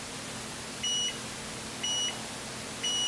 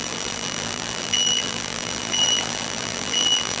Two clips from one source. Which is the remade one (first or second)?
second